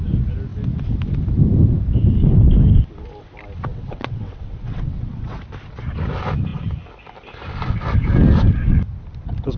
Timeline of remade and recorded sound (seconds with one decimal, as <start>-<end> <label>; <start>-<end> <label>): 0.0-3.7 recorded; 3.7-5.4 remade; 5.4-9.6 recorded